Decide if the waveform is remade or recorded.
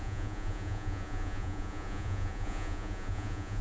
remade